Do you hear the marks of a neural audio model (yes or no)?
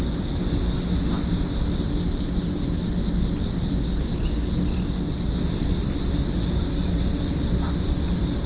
no